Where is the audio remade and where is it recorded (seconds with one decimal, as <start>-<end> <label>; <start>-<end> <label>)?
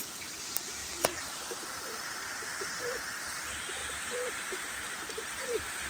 0.0-0.8 recorded; 0.8-1.9 remade; 1.9-5.9 recorded